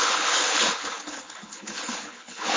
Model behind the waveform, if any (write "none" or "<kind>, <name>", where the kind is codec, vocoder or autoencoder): codec, HILCodec